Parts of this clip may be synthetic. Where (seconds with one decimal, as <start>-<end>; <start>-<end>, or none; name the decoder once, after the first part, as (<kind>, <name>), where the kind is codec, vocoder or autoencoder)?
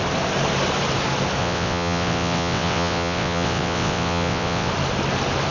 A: 1.4-4.7 (vocoder, WaveNeXt)